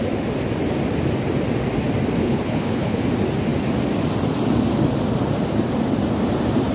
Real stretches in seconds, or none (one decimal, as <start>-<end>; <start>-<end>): 0.0-2.2; 3.0-6.7